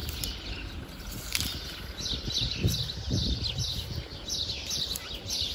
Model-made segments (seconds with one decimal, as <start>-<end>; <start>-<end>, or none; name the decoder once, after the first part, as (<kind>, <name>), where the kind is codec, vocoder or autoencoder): none